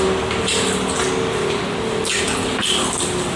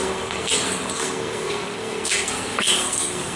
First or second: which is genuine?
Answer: first